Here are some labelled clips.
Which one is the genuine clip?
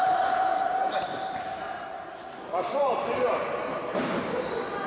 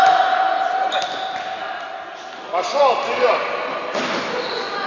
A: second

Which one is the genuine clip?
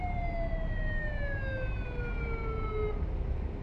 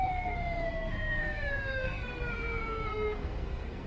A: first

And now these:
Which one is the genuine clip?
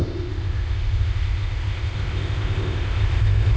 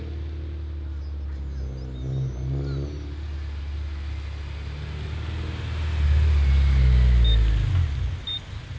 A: second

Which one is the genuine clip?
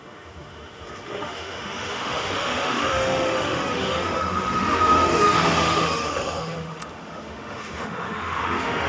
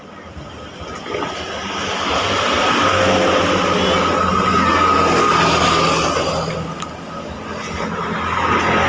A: second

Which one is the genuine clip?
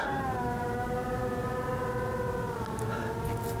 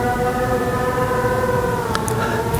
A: first